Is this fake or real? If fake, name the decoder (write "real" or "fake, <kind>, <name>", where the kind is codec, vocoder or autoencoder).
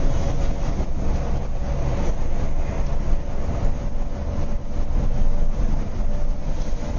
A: real